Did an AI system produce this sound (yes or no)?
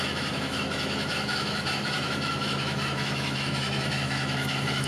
yes